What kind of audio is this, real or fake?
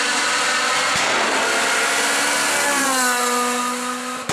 real